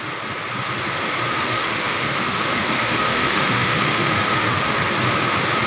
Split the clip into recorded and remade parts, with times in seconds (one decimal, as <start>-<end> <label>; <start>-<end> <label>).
0.0-1.4 recorded; 1.4-4.8 remade; 4.8-5.7 recorded